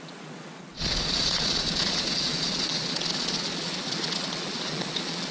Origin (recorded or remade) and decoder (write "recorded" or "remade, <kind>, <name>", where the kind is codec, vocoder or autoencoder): remade, vocoder, Vocos